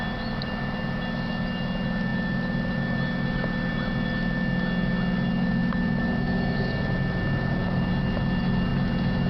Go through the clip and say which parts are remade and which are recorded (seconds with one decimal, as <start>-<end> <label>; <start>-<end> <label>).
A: 0.0-9.3 recorded